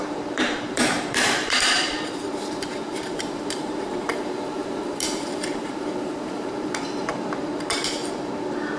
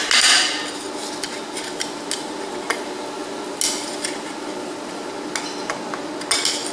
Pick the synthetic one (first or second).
first